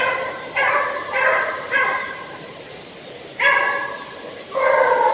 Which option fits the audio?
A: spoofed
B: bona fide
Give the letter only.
A